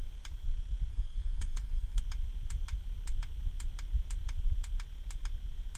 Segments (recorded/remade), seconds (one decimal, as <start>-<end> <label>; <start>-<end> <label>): 0.0-0.9 recorded; 0.9-2.0 remade; 2.0-5.8 recorded